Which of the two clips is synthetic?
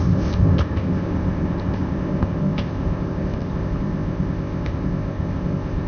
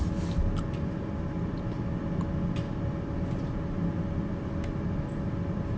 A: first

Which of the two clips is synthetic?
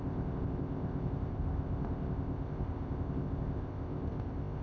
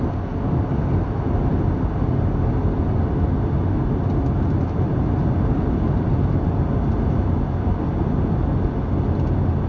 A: first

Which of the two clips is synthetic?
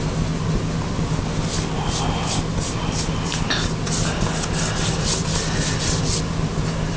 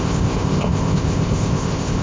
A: second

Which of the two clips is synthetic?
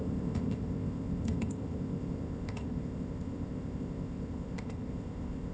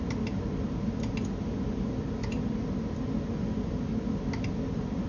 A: first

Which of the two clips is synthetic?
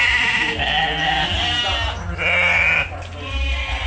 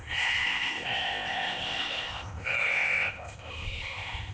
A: second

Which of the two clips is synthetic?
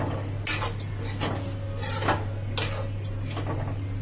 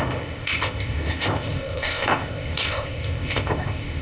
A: second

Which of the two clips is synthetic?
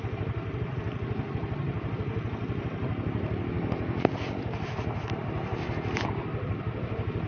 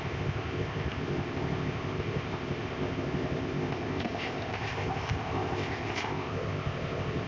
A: second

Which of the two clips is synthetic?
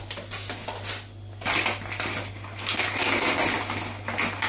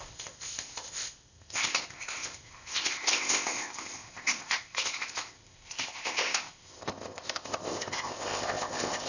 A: second